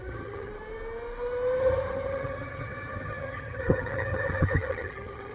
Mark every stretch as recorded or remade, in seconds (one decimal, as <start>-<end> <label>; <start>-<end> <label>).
0.0-0.5 remade; 0.5-1.6 recorded; 1.6-5.3 remade